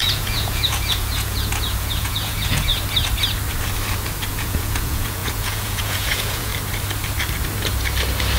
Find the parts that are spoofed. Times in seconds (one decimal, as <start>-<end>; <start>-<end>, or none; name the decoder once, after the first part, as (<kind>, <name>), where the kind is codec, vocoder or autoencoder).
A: 0.0-2.7 (vocoder, Vocos); 4.3-6.5